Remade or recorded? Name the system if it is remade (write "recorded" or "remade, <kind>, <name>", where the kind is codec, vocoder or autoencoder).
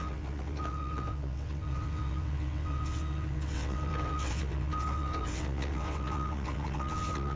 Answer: remade, vocoder, WaveNeXt